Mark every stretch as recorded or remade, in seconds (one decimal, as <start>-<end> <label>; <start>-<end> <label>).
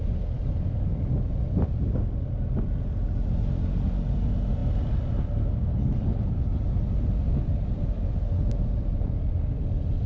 0.0-5.7 recorded; 5.7-6.6 remade; 6.6-10.1 recorded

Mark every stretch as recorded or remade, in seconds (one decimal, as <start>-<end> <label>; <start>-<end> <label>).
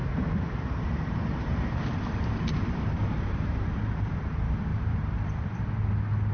0.0-3.8 remade; 3.8-4.7 recorded; 4.7-5.6 remade; 5.6-6.3 recorded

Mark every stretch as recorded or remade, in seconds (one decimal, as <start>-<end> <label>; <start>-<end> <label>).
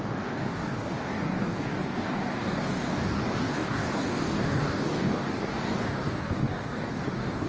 0.0-7.5 remade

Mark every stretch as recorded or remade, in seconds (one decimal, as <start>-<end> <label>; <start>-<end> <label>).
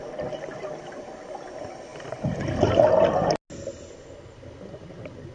0.0-5.3 recorded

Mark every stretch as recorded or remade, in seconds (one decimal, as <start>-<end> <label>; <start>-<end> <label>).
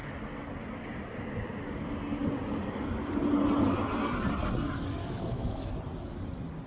0.0-5.0 recorded; 5.0-5.7 remade; 5.7-6.7 recorded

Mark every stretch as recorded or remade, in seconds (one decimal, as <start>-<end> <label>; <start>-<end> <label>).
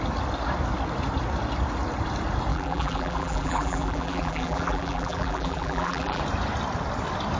0.0-2.5 recorded; 2.5-6.2 remade; 6.2-7.4 recorded